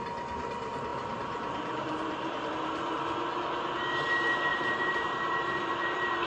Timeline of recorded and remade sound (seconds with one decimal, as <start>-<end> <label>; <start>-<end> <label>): 0.0-0.9 recorded; 0.9-2.5 remade; 2.5-4.5 recorded; 4.5-6.3 remade